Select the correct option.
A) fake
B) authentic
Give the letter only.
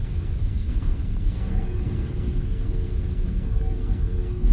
A